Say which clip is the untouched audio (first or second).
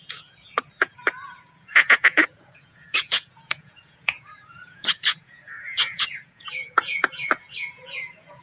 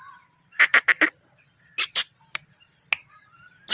second